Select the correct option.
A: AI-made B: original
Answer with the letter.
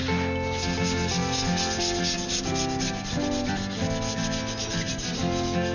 B